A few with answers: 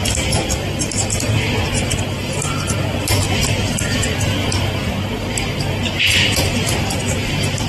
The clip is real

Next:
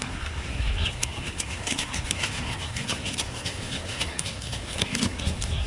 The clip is fake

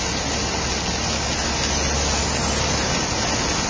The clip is real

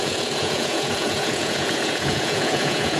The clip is fake